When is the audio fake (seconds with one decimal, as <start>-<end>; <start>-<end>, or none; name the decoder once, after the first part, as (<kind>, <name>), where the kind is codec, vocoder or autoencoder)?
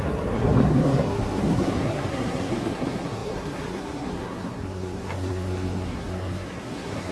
0.0-7.1 (codec, SNAC)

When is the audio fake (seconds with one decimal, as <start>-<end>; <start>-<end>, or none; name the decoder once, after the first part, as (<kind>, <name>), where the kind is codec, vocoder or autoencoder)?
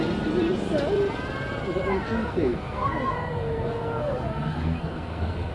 1.9-5.5 (codec, SNAC)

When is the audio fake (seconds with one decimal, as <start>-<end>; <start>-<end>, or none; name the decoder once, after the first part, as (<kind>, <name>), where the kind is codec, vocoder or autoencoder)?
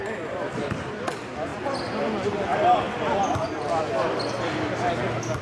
none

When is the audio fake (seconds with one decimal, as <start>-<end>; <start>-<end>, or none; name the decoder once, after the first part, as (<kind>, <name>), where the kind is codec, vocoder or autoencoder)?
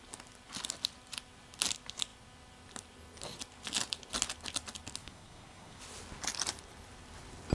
5.0-5.8 (codec, SNAC)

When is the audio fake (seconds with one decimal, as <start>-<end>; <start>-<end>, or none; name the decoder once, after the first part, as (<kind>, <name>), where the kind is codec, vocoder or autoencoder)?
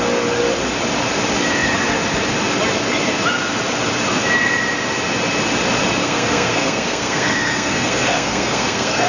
6.0-9.1 (codec, SNAC)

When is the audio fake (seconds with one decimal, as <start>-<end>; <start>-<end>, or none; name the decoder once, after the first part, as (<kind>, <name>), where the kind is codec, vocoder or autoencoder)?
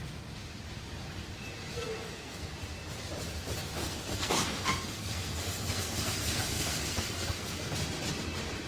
1.7-2.5 (codec, SNAC); 3.8-7.7